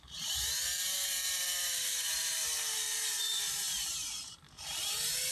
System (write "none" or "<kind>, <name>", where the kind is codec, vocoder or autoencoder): vocoder, BigVGAN v2